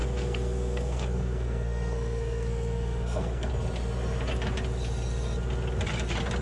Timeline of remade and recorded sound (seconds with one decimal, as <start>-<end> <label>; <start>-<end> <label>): 0.0-3.5 remade; 3.5-6.4 recorded